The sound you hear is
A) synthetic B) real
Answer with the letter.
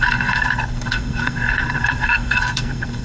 A